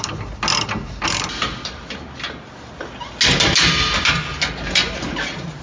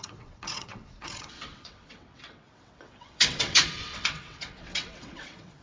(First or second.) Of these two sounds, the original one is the first